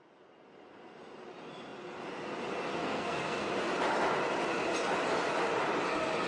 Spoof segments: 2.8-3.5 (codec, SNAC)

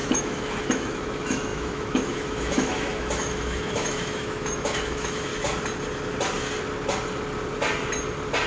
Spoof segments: 0.0-5.3 (autoencoder, DAC-VAE)